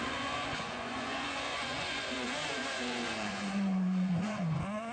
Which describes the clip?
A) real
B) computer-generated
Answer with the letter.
B